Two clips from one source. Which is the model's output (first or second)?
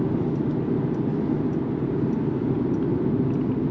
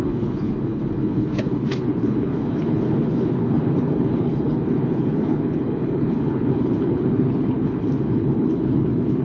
second